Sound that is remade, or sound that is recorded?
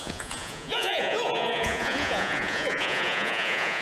remade